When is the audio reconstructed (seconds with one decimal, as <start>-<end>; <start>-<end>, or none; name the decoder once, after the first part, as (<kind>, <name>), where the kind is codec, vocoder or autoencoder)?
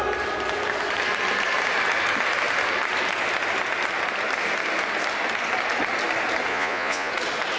6.5-7.1 (vocoder, Vocos)